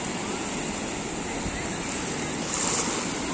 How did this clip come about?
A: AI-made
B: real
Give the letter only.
B